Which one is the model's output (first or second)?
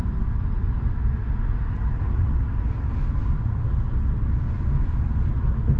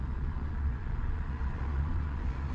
second